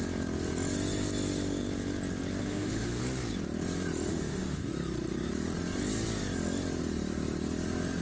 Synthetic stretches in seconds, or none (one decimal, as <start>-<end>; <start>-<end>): 2.4-3.0; 4.1-4.7